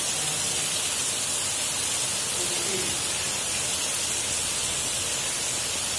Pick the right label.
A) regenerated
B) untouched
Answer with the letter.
B